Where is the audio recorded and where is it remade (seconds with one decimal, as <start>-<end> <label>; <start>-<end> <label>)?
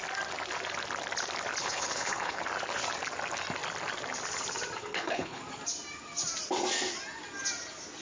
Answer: 0.0-1.6 recorded; 1.6-2.4 remade; 2.4-4.8 recorded; 4.8-5.4 remade; 5.4-8.0 recorded